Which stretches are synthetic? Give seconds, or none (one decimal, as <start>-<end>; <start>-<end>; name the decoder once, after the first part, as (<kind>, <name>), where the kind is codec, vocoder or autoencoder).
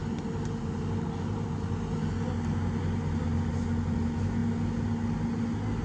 none